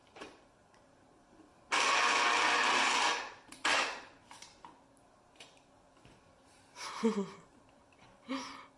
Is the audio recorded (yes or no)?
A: no